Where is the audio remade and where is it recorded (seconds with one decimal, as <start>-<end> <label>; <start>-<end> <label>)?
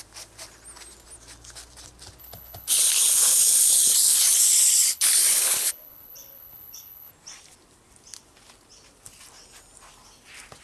0.0-2.2 recorded; 2.2-7.1 remade; 7.1-10.6 recorded